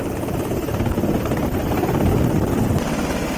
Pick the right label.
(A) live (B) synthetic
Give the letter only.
A